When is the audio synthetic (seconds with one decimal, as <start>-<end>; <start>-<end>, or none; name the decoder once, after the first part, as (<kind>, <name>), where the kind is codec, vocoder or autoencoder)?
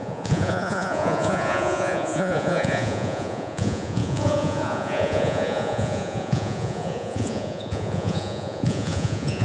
0.0-9.4 (vocoder, Vocos)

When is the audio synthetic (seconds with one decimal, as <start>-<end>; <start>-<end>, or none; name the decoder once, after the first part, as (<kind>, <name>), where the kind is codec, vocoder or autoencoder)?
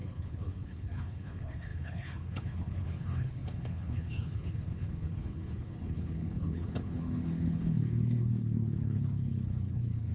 0.0-10.1 (codec, HILCodec)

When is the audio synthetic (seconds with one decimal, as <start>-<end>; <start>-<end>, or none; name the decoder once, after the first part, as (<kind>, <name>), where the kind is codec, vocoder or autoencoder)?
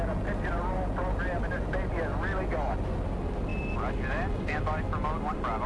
none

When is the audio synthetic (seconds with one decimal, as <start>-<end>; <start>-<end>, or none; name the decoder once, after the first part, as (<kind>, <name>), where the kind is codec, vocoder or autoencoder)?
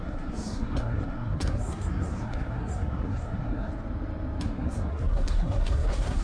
0.0-3.7 (codec, SNAC); 4.4-6.2